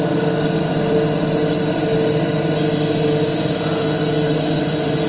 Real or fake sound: real